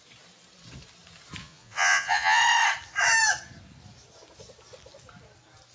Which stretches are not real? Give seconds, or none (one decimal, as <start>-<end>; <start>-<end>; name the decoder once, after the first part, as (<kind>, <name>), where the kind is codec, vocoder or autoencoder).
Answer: 1.4-2.4 (vocoder, Vocos)

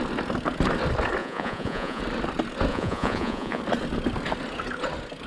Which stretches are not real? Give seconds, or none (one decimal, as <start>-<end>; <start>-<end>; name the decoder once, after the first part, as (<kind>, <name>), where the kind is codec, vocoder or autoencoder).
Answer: 1.2-2.0 (vocoder, Vocos); 2.7-3.6

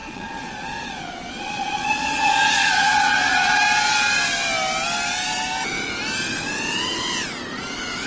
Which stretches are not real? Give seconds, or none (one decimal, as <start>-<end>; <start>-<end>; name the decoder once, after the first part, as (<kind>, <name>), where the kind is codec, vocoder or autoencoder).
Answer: 0.0-3.6 (vocoder, Vocos)

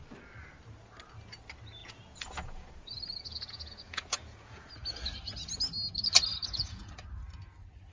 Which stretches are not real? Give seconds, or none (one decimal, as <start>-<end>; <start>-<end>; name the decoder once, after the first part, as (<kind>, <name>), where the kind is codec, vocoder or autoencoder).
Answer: 1.8-4.7 (vocoder, Vocos); 6.3-6.9